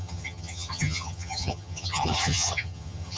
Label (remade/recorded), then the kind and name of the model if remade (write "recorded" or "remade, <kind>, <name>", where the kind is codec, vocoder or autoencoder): remade, vocoder, HiFi-GAN